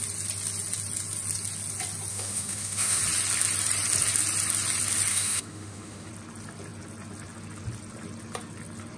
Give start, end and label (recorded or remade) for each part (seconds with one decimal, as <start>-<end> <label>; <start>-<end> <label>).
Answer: 0.0-2.1 recorded; 2.1-3.0 remade; 3.0-5.1 recorded; 5.1-6.1 remade; 6.1-9.0 recorded